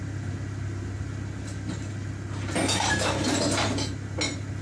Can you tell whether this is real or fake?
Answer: real